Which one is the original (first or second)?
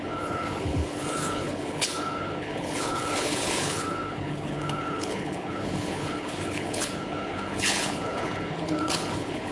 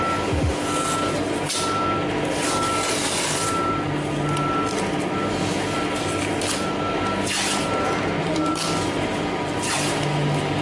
second